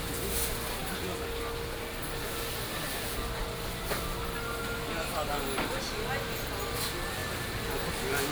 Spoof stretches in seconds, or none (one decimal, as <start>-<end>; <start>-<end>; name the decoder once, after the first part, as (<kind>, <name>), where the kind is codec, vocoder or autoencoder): none